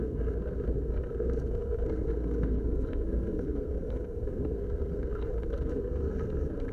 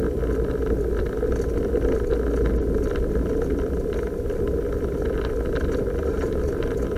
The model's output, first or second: first